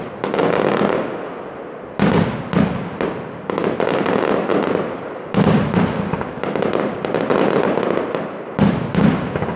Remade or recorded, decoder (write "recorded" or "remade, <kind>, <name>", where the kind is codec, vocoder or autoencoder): recorded